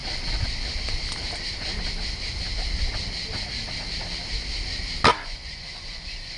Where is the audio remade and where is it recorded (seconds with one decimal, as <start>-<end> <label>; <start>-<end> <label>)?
0.0-5.1 recorded; 5.1-6.4 remade